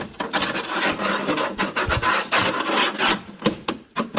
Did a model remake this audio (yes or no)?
no